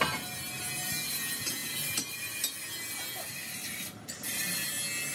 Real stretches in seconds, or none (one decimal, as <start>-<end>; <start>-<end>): 0.0-5.1